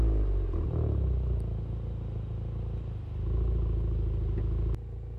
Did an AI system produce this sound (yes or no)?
no